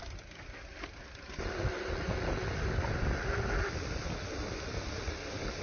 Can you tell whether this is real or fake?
real